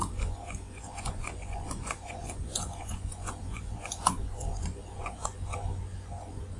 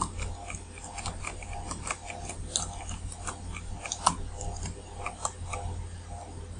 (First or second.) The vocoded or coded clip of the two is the first